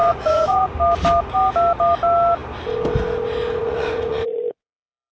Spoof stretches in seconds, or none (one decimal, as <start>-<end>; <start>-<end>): 0.0-0.7; 3.6-5.1